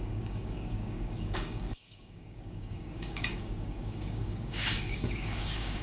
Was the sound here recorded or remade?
remade